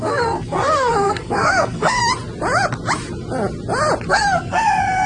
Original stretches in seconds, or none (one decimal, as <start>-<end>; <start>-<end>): 2.0-4.1